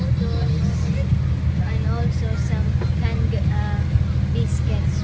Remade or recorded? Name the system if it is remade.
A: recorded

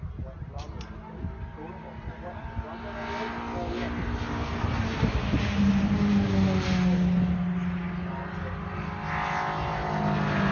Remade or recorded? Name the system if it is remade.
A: recorded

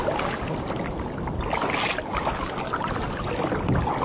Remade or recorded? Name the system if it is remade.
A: recorded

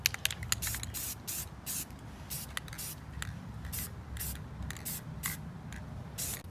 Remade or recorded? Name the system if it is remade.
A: recorded